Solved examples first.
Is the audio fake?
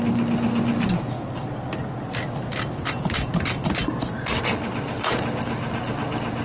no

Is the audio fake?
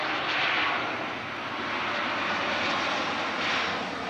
no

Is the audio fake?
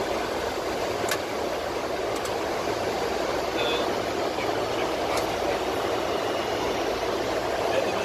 no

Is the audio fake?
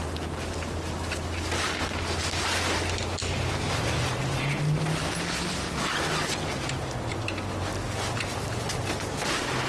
no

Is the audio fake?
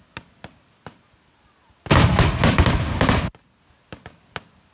no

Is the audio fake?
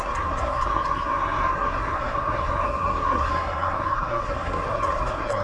yes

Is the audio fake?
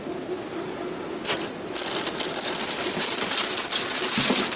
no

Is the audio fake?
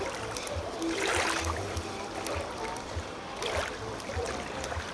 no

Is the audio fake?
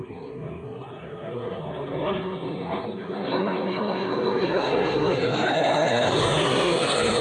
yes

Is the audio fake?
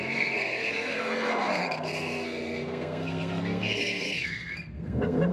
yes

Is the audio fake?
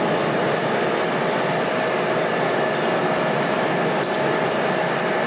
no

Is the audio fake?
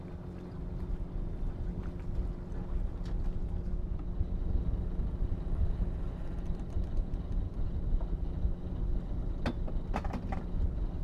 no